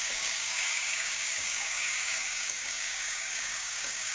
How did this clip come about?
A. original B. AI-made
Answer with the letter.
B